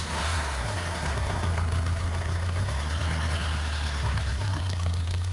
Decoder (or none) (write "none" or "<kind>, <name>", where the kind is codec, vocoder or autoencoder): codec, SNAC